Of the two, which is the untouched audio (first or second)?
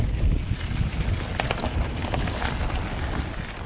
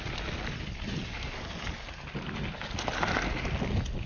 second